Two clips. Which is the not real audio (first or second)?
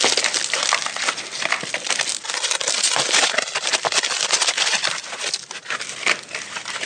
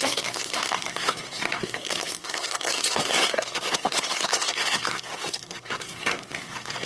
second